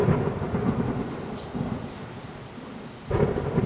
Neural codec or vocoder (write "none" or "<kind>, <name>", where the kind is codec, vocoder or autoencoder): none